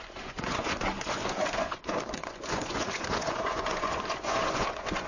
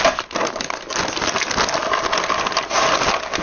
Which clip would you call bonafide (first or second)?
second